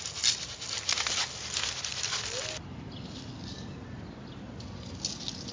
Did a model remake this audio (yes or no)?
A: no